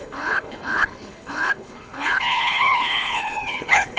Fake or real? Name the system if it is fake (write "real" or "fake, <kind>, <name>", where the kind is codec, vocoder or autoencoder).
fake, codec, HILCodec